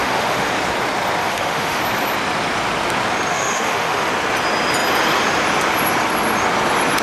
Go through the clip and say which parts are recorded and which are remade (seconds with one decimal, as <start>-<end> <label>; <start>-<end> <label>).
0.0-0.5 remade; 0.5-1.2 recorded; 1.2-1.8 remade; 1.8-3.3 recorded; 3.3-4.1 remade; 4.1-7.0 recorded